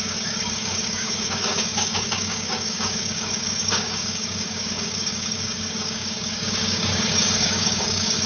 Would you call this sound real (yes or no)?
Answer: no